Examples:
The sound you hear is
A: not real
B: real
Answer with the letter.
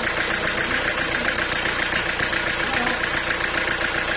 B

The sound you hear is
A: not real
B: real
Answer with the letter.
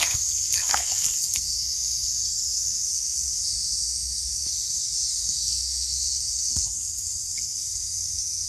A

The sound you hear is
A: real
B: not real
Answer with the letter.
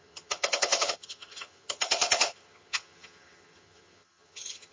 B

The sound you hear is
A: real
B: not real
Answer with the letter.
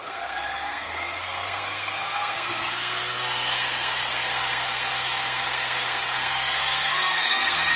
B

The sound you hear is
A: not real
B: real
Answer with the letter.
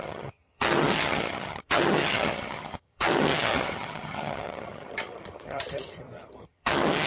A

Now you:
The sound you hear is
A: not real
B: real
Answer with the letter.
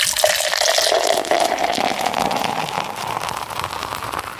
B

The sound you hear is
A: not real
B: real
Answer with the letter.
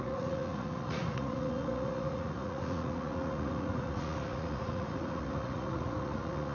A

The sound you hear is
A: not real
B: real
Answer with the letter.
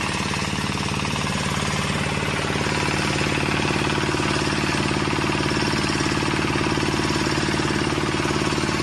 B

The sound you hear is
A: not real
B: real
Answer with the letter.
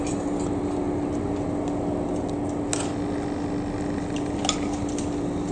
B